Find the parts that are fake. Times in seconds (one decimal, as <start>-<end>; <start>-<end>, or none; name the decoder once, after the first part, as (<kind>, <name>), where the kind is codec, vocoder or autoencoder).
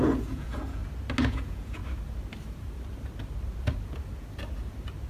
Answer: 0.0-0.8 (vocoder, Vocos); 1.3-1.8